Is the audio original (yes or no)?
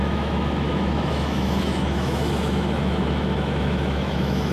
no